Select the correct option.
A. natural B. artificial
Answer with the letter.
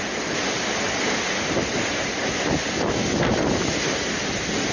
A